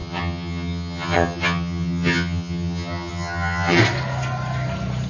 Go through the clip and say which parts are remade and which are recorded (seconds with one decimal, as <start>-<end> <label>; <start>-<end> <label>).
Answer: 0.0-3.8 remade; 3.8-5.1 recorded